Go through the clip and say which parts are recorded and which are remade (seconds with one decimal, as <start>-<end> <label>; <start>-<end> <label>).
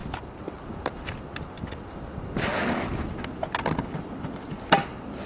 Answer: 0.0-0.6 remade; 0.6-5.3 recorded